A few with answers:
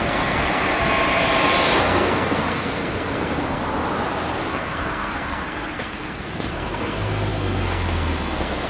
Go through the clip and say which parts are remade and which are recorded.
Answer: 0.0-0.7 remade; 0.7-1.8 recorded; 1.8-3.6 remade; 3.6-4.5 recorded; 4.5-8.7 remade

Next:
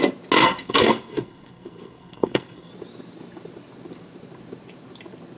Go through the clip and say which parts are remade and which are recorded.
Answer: 0.0-0.4 recorded; 0.4-2.7 remade; 2.7-5.4 recorded

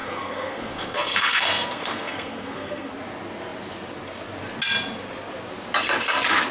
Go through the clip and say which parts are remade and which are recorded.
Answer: 0.0-2.9 remade; 2.9-6.5 recorded